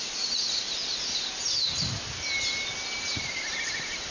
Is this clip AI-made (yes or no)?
no